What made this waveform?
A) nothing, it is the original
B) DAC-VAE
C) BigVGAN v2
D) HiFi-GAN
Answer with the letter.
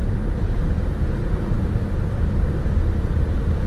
A